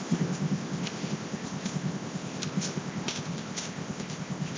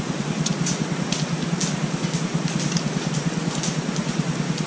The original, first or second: second